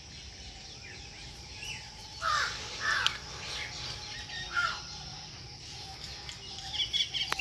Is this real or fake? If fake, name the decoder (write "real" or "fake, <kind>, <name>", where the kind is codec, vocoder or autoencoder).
real